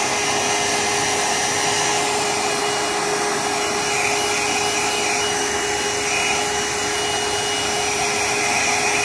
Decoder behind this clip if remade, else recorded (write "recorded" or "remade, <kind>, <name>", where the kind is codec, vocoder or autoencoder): recorded